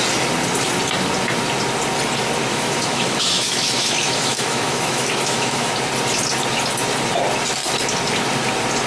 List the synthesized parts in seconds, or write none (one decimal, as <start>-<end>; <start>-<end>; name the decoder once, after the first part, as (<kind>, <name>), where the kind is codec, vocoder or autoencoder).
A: 2.5-5.7 (autoencoder, DAC-VAE)